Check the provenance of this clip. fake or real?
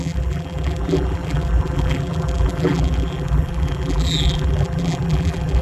fake